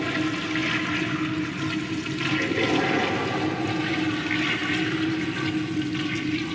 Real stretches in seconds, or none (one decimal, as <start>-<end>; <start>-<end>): 0.0-6.5